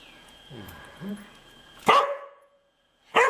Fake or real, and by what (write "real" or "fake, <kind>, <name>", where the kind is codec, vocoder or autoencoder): fake, vocoder, Vocos